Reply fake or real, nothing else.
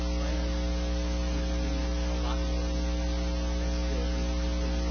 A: real